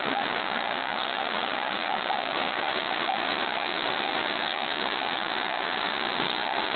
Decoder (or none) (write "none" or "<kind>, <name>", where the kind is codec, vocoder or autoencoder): vocoder, Vocos